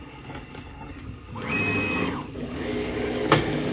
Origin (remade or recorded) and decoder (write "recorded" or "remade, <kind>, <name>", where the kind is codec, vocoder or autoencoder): remade, codec, DAC